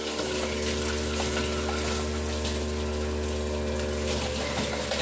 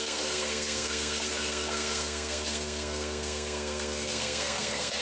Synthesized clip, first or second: second